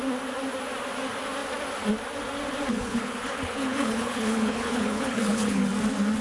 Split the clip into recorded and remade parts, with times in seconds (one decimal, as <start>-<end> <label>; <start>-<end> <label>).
0.0-2.7 recorded; 2.7-5.7 remade; 5.7-6.2 recorded